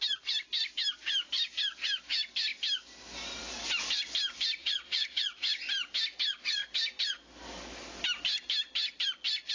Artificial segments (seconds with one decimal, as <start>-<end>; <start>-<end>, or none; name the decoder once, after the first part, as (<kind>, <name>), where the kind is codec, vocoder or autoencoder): 4.6-5.5 (vocoder, Vocos)